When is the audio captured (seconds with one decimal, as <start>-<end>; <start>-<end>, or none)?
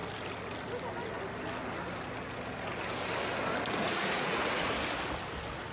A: 0.0-3.8; 4.7-5.7